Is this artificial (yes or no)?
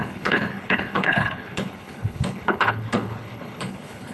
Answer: yes